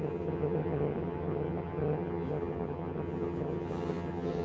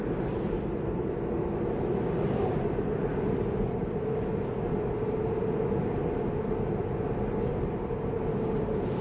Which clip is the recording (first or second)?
second